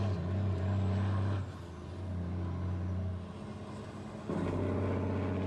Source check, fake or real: real